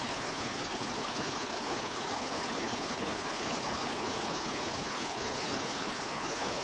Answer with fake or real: fake